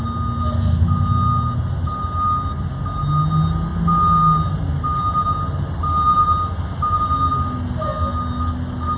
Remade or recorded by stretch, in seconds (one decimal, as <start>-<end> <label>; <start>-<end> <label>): 0.0-9.0 recorded